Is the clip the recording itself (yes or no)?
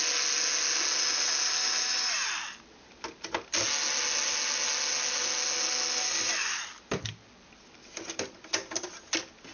yes